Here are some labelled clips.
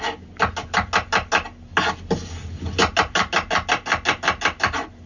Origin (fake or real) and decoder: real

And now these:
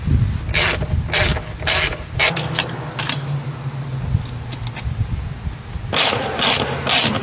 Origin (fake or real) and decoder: real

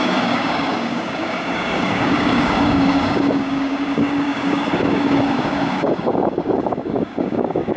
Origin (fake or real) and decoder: fake, codec, DAC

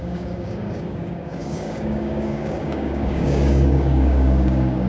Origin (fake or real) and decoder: fake, codec, DAC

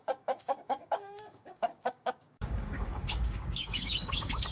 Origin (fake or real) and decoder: fake, codec, DAC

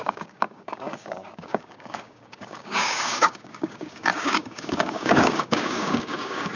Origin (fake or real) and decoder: fake, codec, DAC